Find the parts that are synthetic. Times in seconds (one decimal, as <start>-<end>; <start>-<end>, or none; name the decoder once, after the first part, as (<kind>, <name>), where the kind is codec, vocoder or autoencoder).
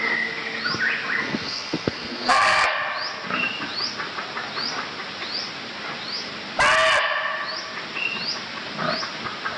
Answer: 1.2-2.7 (codec, SNAC)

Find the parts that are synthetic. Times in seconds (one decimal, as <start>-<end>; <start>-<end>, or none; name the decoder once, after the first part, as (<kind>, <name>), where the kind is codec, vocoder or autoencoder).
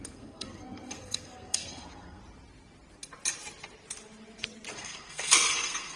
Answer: 0.0-2.2 (codec, SNAC); 4.7-6.0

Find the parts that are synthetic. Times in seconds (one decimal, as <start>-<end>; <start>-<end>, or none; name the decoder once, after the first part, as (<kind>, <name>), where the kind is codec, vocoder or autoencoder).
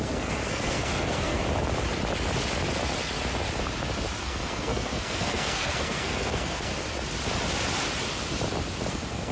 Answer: 0.0-1.4 (codec, SNAC); 4.2-6.7; 8.9-9.3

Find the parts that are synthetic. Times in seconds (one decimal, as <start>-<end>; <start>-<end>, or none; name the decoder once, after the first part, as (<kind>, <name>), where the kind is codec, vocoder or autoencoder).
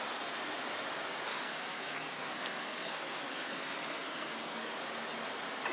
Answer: 1.3-4.7 (codec, SNAC)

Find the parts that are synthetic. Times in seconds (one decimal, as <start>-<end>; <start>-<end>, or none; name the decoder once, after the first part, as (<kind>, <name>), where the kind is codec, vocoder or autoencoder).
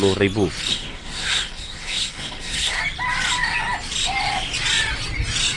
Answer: 0.7-2.8 (codec, SNAC)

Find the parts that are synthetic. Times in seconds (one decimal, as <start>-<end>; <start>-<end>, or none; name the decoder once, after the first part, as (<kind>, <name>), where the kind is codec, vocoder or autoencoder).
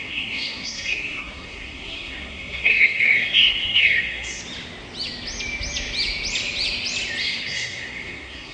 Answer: 0.0-4.4 (codec, SNAC); 7.2-8.5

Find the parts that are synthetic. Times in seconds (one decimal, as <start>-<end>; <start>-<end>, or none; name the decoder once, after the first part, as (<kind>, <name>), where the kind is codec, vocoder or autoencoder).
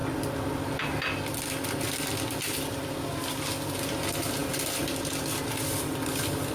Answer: none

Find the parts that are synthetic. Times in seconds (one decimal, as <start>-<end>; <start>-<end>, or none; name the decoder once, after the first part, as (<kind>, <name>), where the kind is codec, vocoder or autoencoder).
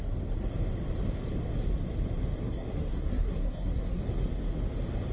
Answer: 2.4-4.0 (codec, SNAC)